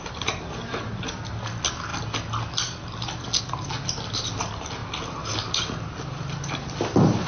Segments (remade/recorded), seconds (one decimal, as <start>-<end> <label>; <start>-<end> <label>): 0.0-7.3 recorded